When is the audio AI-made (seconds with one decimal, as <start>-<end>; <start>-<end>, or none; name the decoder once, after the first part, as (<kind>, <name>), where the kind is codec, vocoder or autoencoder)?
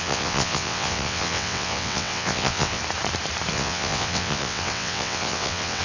0.0-2.8 (vocoder, WaveNeXt); 3.5-5.8